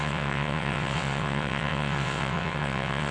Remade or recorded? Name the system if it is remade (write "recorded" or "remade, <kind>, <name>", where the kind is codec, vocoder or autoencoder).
remade, vocoder, WaveNeXt